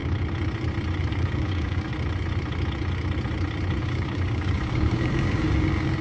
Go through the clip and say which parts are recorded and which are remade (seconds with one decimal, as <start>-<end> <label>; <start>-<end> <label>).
0.0-1.1 recorded; 1.1-1.9 remade; 1.9-3.8 recorded; 3.8-6.0 remade